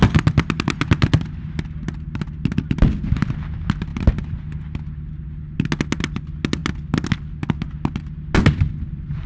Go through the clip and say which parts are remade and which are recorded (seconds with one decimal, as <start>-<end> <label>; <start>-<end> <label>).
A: 0.0-9.3 recorded